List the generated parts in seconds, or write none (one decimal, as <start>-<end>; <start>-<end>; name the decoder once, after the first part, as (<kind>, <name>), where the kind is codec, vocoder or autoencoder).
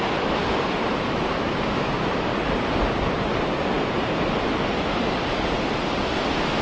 0.0-0.4 (autoencoder, DAC-VAE); 0.9-2.3